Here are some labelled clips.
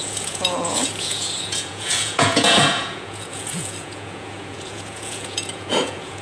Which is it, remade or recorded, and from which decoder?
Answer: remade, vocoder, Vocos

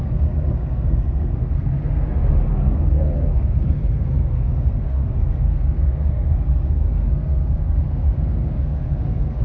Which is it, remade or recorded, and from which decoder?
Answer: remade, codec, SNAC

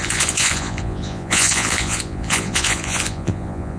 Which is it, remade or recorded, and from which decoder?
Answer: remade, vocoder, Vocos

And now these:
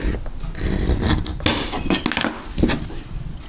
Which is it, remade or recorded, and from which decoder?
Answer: recorded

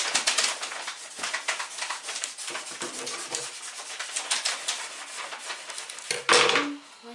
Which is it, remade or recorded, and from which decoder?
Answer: recorded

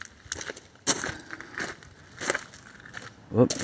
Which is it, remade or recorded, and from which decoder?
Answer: recorded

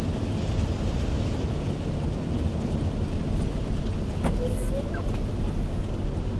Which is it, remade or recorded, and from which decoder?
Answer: recorded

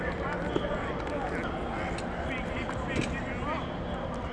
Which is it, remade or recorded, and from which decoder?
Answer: recorded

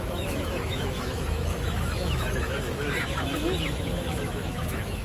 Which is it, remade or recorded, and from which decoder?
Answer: remade, autoencoder, DAC-VAE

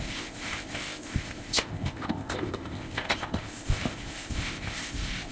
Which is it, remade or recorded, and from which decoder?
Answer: remade, codec, ZipCodec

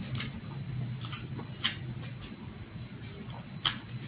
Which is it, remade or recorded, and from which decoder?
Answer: recorded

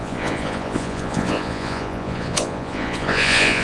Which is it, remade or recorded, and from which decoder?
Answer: remade, vocoder, Vocos